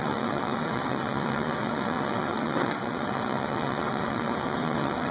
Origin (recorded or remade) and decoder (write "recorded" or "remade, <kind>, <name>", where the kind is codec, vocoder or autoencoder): remade, vocoder, WaveNeXt